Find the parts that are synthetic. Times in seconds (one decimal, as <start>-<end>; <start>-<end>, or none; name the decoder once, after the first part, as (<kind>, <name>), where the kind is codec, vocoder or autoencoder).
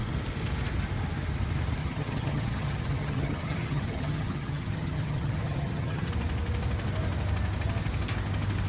1.8-6.1 (vocoder, HiFi-GAN)